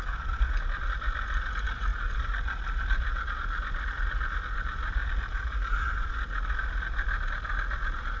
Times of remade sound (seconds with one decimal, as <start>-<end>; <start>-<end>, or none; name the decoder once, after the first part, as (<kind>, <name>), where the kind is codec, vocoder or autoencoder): none